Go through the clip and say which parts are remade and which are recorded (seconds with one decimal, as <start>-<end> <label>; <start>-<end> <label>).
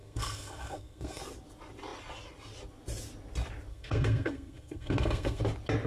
0.0-1.2 remade; 1.2-3.7 recorded; 3.7-5.4 remade; 5.4-5.9 recorded